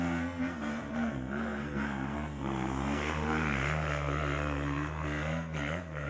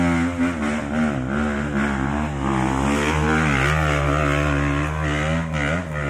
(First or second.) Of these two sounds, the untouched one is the second